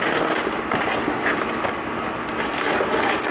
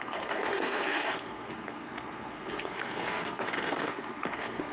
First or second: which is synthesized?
second